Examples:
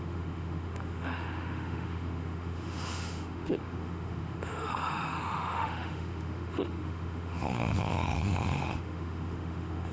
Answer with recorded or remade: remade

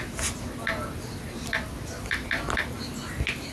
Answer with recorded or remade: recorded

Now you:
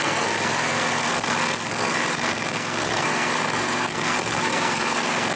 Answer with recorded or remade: remade